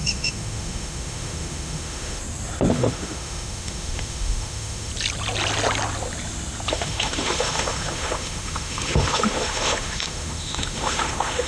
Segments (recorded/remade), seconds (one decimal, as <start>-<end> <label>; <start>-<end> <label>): 0.0-2.2 remade; 2.2-2.7 recorded; 2.7-4.9 remade; 4.9-6.7 recorded; 6.7-11.5 remade

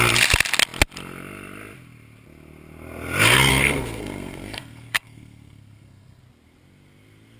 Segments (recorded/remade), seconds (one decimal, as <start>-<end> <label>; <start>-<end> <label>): 0.0-3.5 recorded; 3.5-6.2 remade; 6.2-7.4 recorded

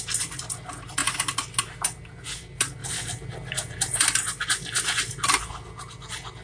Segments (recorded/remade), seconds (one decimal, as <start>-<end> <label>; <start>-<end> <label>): 0.0-6.4 recorded